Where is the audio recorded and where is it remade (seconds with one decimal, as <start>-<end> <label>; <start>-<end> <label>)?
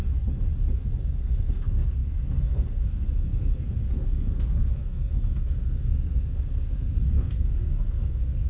0.0-1.0 recorded; 1.0-8.5 remade